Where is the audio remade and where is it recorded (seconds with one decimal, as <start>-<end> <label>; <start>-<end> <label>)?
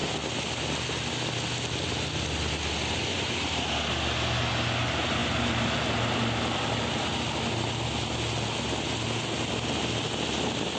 0.0-10.8 recorded